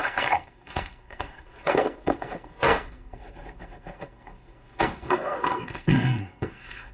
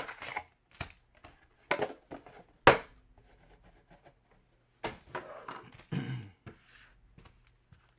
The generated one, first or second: first